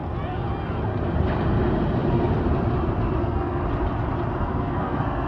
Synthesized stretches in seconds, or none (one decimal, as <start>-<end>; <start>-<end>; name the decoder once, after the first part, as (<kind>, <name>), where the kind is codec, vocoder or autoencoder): 3.2-3.6 (codec, SNAC); 4.4-5.3